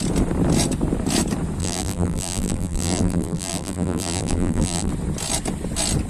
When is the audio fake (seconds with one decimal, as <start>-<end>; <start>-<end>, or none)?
1.6-4.9